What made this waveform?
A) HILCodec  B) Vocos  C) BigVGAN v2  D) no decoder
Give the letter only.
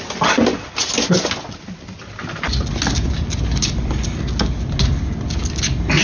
D